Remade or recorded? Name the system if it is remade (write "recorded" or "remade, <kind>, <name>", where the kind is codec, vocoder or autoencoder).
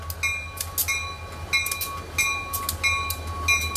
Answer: recorded